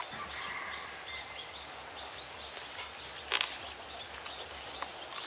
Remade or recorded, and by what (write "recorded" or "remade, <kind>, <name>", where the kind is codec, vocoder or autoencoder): recorded